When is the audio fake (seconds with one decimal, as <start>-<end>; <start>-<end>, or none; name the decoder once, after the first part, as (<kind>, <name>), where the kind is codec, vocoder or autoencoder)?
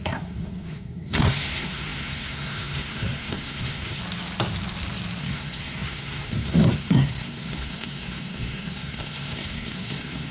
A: 0.0-4.0 (codec, SNAC); 5.2-10.3